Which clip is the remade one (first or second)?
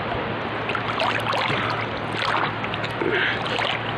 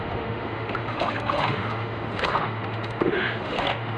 second